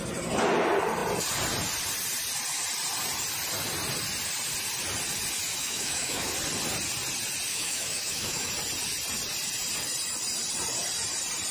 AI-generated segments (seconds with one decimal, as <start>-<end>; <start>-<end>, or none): 5.6-6.3; 7.5-8.5